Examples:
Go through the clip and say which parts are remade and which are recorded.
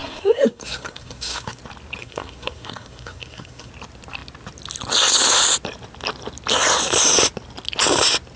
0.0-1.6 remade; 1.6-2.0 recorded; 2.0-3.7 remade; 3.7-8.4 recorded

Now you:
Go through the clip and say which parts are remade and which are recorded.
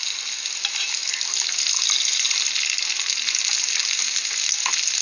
0.0-5.0 recorded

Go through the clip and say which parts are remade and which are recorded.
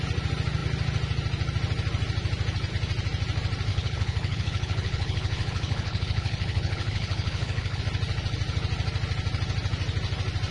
0.0-3.7 recorded; 3.7-7.8 remade; 7.8-10.5 recorded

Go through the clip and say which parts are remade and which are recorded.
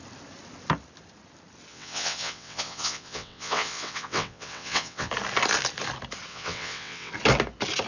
0.0-1.7 recorded; 1.7-5.1 remade; 5.1-6.3 recorded; 6.3-7.1 remade; 7.1-7.9 recorded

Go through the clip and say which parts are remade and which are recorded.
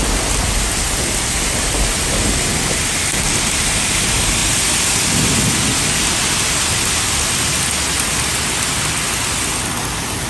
0.0-10.3 recorded